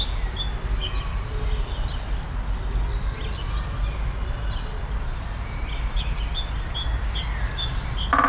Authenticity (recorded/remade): recorded